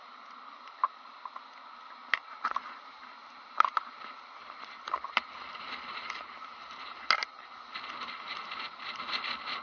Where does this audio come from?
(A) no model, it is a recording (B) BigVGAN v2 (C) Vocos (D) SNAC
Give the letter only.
A